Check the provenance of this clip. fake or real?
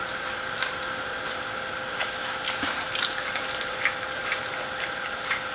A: real